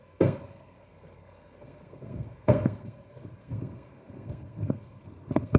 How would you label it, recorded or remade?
remade